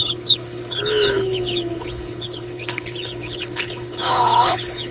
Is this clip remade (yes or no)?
yes